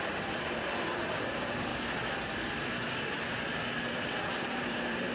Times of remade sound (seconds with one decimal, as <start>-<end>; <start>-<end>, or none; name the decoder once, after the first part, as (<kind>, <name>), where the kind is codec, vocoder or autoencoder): 0.0-5.1 (vocoder, BigVGAN v2)